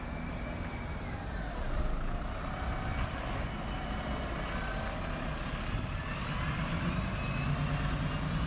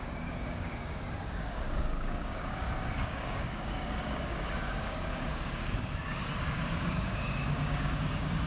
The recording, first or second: first